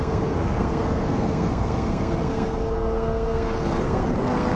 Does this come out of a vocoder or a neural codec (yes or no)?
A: yes